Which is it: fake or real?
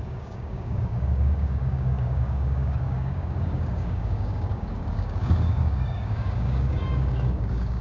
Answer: fake